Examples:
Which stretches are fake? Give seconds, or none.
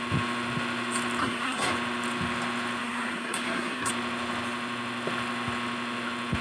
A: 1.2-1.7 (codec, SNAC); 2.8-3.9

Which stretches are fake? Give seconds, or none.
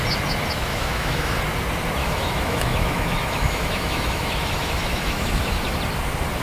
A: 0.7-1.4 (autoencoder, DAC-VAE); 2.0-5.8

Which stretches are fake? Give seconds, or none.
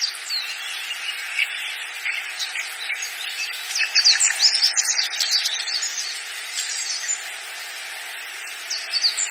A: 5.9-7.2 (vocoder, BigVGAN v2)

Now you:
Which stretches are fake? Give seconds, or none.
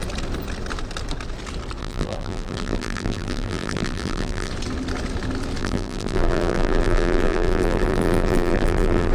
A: 1.8-4.5 (vocoder, BigVGAN v2); 5.6-9.1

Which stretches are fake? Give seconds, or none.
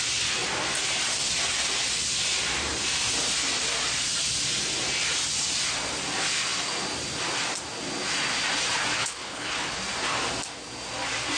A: 9.0-9.8 (codec, HILCodec)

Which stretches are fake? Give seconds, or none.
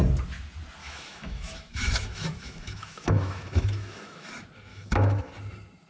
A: 0.8-4.3 (autoencoder, DAC-VAE); 4.7-5.3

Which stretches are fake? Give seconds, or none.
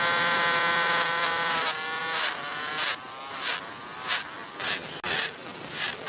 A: none